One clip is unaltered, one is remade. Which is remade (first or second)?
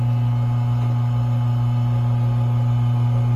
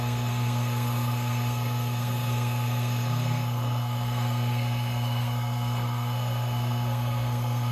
second